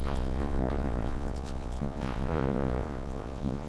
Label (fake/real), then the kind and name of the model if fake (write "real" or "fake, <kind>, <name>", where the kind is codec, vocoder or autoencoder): fake, vocoder, Vocos